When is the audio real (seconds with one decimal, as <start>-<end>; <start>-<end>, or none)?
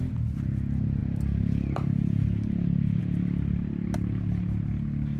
0.0-5.2